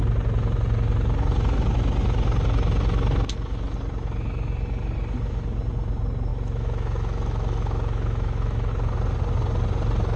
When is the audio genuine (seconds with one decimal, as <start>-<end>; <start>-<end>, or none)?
0.0-6.3; 8.7-10.2